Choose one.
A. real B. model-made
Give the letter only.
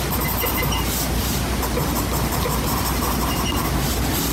A